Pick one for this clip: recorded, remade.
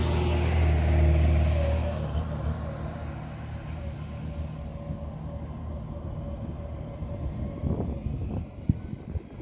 recorded